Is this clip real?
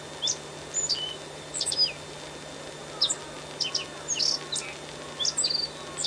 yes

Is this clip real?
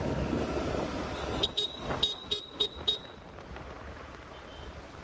yes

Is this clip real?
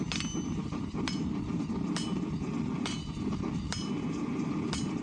yes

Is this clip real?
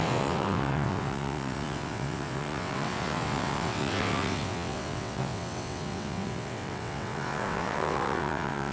no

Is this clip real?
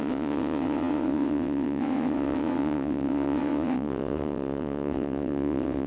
no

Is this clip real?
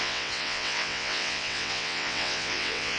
no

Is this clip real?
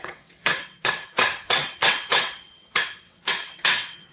no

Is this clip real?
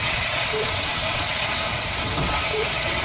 no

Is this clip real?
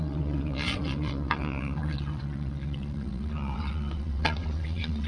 no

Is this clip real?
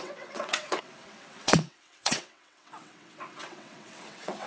no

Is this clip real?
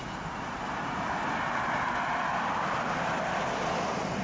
yes